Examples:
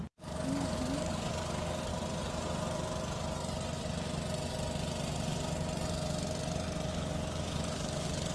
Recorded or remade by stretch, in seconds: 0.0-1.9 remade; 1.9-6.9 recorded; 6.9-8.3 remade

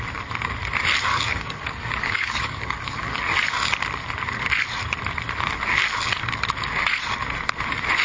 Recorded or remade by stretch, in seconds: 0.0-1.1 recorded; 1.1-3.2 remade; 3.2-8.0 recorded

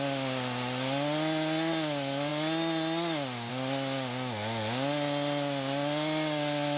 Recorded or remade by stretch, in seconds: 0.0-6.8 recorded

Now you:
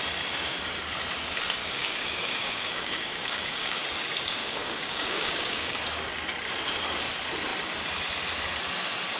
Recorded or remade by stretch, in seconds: 0.0-1.6 recorded; 1.6-3.8 remade; 3.8-4.4 recorded; 4.4-5.8 remade; 5.8-9.2 recorded

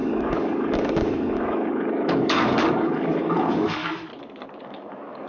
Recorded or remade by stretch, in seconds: 0.0-4.1 remade; 4.1-4.6 recorded; 4.6-5.3 remade